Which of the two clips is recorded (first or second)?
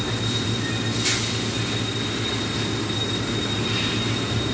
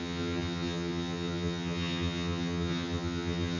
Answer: first